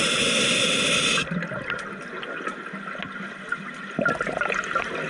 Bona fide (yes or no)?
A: yes